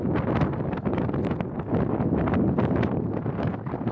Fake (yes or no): no